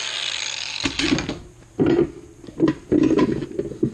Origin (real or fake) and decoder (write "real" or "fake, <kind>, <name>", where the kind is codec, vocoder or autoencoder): real